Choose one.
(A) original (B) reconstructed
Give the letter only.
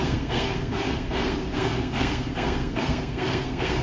B